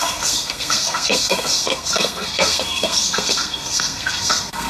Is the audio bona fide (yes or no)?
no